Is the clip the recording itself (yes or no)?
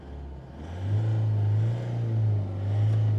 yes